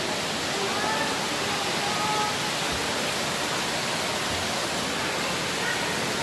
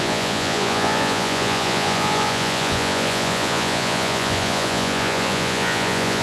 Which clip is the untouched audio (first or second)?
first